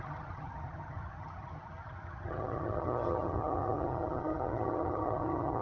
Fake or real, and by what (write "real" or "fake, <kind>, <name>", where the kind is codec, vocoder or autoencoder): fake, vocoder, HiFi-GAN